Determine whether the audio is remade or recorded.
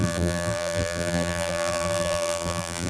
remade